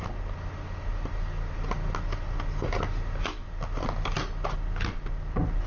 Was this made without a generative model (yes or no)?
yes